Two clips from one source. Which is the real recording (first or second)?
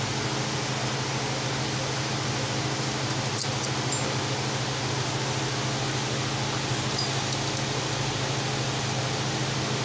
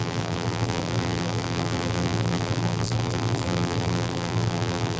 first